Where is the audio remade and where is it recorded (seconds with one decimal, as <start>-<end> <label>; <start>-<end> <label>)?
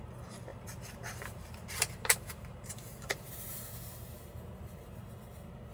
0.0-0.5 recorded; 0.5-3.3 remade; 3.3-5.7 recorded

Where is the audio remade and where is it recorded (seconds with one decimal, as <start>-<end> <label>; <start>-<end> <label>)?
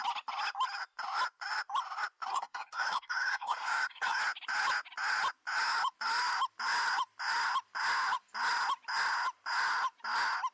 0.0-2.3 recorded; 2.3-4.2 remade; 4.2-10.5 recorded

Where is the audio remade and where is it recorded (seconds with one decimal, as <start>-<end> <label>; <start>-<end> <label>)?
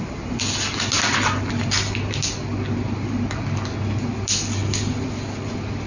0.0-5.9 recorded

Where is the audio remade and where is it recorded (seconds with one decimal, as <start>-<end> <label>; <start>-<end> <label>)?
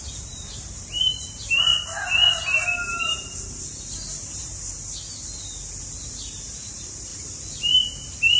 0.0-1.7 remade; 1.7-2.9 recorded; 2.9-4.5 remade; 4.5-5.8 recorded; 5.8-7.1 remade; 7.1-8.4 recorded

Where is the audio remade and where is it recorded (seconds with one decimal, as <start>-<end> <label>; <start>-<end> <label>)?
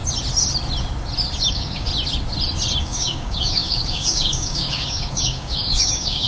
0.0-1.5 recorded; 1.5-1.9 remade; 1.9-2.8 recorded; 2.8-6.3 remade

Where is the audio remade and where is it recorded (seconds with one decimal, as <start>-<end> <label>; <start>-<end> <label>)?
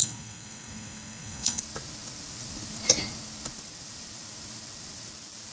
0.0-1.6 remade; 1.6-5.5 recorded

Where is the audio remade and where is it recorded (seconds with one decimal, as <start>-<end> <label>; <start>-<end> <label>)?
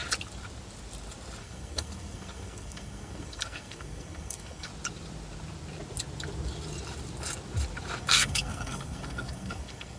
0.0-1.4 recorded; 1.4-4.7 remade; 4.7-8.0 recorded; 8.0-10.0 remade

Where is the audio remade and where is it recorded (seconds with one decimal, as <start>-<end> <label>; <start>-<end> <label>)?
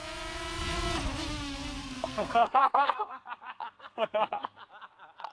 0.0-1.8 recorded; 1.8-4.6 remade; 4.6-5.3 recorded